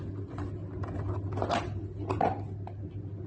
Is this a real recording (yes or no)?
yes